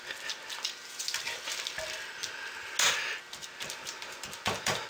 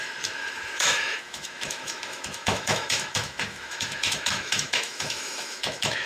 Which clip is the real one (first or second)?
first